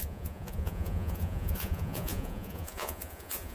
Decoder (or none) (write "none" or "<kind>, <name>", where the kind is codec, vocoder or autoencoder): vocoder, Vocos